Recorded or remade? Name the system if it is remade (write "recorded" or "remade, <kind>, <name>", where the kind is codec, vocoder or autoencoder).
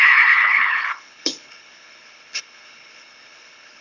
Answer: remade, codec, HILCodec